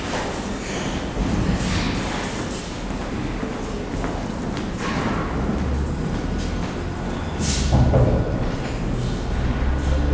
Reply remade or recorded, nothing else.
recorded